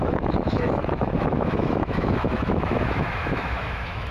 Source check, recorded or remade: remade